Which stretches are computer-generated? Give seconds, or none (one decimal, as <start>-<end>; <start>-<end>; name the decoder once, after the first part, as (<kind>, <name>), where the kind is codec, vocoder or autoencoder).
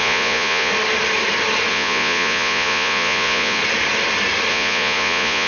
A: 0.0-0.7 (vocoder, Vocos); 1.7-3.6; 4.5-5.5